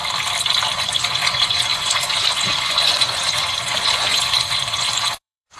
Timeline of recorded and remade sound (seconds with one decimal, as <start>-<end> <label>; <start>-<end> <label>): 0.0-0.7 recorded; 0.7-5.6 remade